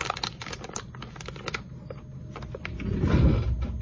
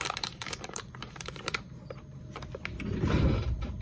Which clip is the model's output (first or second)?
second